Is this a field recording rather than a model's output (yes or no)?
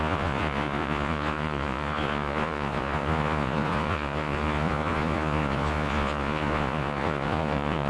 no